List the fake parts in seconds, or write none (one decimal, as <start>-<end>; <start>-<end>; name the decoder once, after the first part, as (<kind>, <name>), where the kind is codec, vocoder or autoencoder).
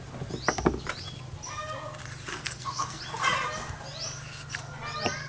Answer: 2.3-3.0 (codec, SNAC)